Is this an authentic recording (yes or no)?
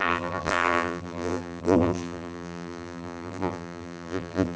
no